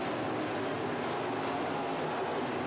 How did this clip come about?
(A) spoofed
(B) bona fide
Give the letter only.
B